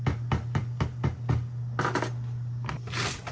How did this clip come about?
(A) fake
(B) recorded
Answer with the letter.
B